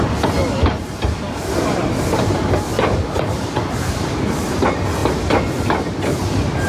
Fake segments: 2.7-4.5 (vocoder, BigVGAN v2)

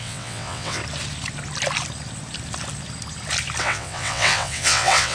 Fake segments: 0.0-0.8 (vocoder, WaveNeXt); 3.6-5.1

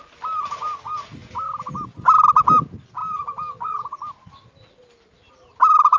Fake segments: none

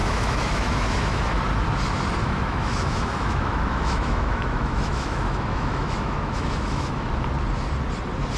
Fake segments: 0.0-1.4 (autoencoder, DAC-VAE); 2.2-7.1